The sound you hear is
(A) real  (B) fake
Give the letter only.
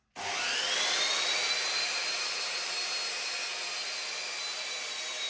A